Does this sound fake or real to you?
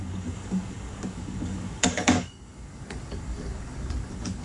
fake